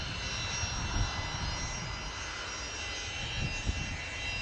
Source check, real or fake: real